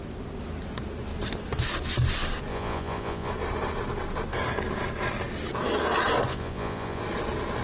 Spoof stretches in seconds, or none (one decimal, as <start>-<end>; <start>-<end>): 2.5-3.3; 6.3-7.0